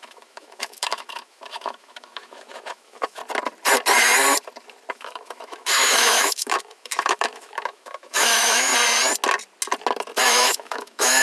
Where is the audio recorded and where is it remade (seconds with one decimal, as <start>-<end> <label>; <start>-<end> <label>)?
0.0-3.2 remade; 3.2-4.9 recorded; 4.9-8.7 remade; 8.7-10.2 recorded; 10.2-11.2 remade